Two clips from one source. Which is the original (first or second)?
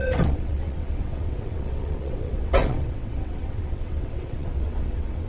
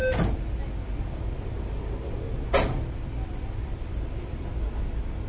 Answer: second